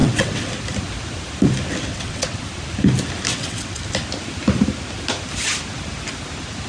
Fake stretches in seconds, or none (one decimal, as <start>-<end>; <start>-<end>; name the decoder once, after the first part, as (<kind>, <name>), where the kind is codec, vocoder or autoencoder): 0.0-0.5 (vocoder, WaveNeXt); 1.9-2.4; 3.3-3.8